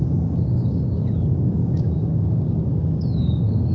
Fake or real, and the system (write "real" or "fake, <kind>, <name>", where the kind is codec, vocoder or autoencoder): fake, codec, DAC